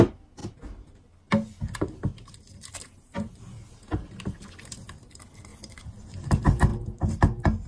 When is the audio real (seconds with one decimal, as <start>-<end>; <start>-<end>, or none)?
0.0-5.5; 6.3-7.7